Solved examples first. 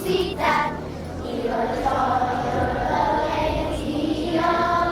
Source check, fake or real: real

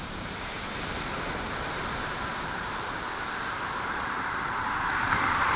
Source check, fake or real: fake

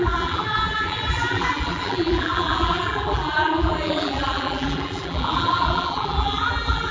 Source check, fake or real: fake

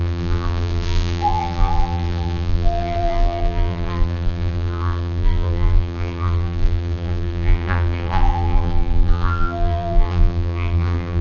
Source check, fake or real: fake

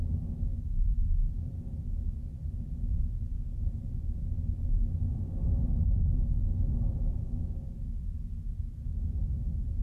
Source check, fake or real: real